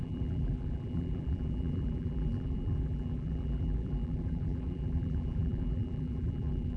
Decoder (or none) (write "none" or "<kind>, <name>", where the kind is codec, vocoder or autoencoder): vocoder, BigVGAN v2